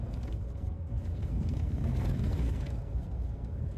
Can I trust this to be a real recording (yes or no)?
no